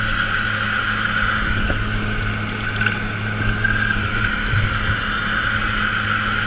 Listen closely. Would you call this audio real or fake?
real